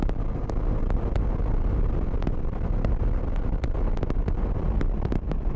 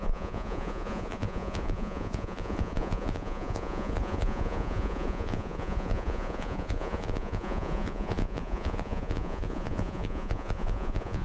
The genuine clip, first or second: first